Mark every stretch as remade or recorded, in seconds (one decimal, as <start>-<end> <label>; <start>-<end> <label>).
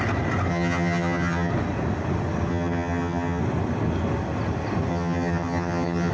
0.0-0.5 recorded; 0.5-1.5 remade; 1.5-2.5 recorded; 2.5-3.4 remade; 3.4-4.9 recorded; 4.9-6.1 remade